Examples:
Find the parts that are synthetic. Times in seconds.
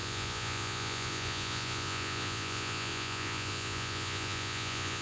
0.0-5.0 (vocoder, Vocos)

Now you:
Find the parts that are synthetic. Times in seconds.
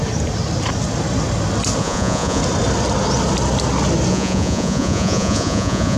1.8-2.4 (vocoder, Vocos); 4.1-6.0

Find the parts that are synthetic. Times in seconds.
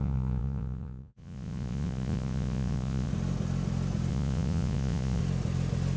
0.0-3.1 (vocoder, Vocos); 4.1-5.2